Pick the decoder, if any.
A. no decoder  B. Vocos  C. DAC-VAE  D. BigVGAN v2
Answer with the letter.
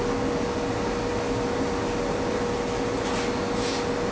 A